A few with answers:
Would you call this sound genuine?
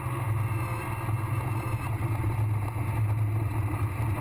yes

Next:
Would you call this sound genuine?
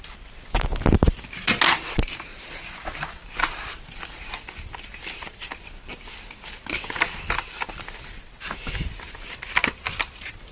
yes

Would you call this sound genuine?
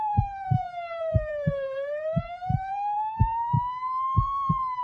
no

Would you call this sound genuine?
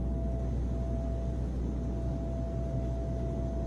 yes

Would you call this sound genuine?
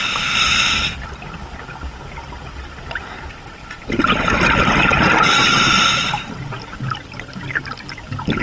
yes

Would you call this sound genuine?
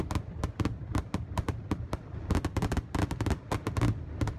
no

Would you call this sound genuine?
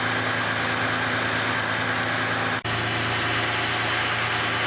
yes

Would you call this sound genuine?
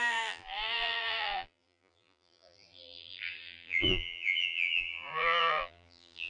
no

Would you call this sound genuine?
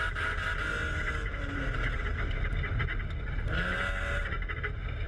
yes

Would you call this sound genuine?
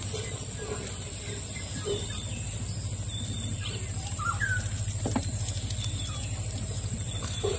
no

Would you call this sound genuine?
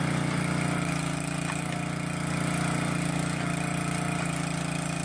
yes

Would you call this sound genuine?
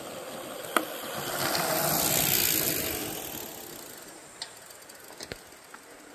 yes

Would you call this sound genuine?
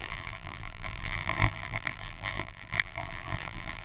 no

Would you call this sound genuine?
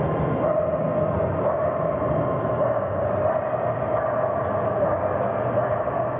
yes